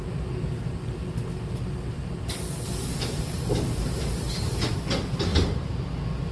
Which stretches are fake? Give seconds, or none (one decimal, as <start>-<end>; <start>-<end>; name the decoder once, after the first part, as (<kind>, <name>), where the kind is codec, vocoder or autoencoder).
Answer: 5.3-5.8 (vocoder, BigVGAN v2)